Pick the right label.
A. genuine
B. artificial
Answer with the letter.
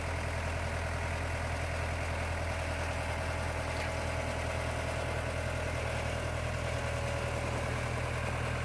A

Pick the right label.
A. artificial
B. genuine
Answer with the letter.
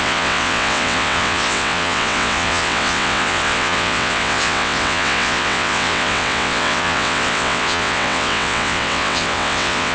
A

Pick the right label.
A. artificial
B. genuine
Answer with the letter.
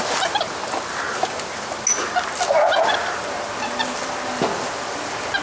B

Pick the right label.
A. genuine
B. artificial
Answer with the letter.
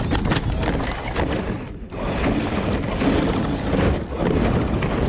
A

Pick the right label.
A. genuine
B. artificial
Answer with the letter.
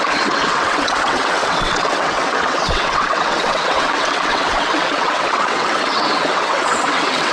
B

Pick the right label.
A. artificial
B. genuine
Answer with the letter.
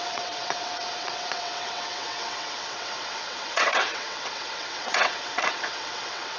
A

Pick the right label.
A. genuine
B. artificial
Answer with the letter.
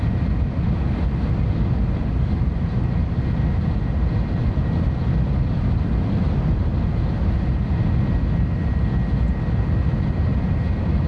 A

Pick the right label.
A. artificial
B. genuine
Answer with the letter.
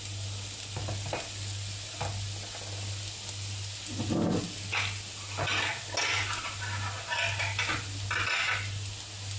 B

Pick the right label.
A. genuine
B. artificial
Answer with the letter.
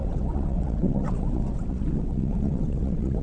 B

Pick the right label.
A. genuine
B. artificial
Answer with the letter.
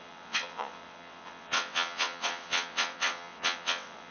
B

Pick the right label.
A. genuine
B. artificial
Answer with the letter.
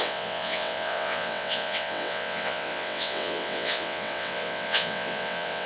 B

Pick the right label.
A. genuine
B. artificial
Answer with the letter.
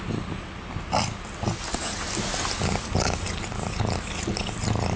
A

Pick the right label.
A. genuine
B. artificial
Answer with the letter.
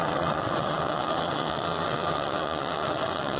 B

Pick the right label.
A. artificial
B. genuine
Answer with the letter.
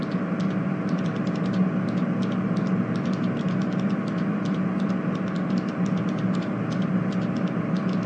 B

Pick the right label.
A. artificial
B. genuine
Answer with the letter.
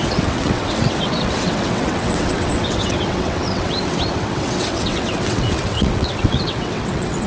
A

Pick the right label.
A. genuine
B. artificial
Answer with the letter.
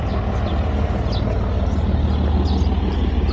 A